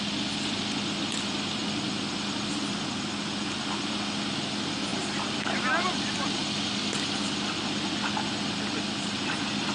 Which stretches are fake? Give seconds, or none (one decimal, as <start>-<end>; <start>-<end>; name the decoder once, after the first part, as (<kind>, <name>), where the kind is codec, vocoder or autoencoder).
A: none